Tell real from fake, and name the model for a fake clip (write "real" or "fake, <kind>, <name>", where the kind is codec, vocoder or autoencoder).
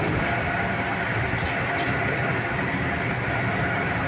real